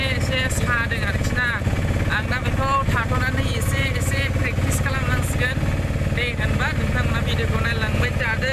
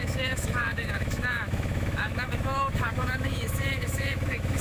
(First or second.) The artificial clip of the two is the second